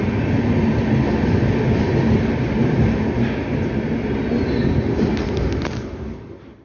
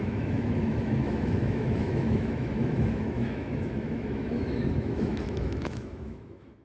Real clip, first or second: first